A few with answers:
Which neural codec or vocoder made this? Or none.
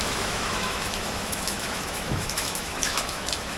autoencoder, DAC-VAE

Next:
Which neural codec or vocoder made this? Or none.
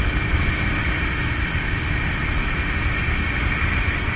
none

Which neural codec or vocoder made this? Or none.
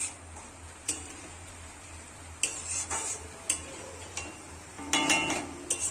none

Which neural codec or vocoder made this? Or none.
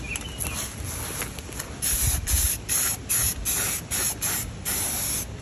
none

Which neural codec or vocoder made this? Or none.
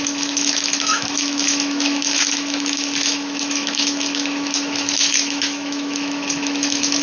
autoencoder, DAC-VAE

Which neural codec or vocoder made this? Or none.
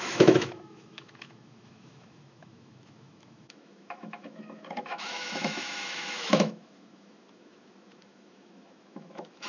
autoencoder, DAC-VAE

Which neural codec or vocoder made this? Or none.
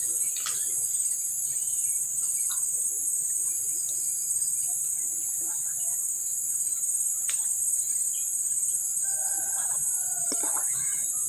none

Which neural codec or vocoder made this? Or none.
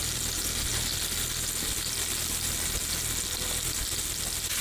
none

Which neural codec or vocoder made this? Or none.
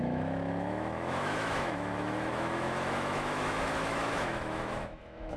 autoencoder, DAC-VAE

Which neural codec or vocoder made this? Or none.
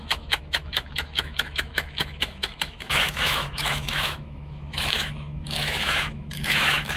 autoencoder, DAC-VAE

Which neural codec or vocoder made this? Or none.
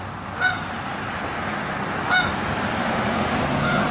none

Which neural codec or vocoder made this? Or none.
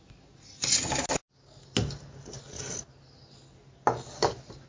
none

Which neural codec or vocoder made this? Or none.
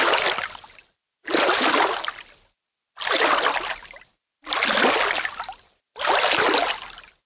none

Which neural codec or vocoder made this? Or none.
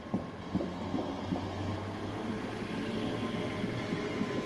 none